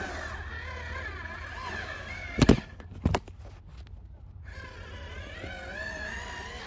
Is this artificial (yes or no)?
no